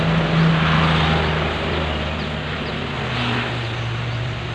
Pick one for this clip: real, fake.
real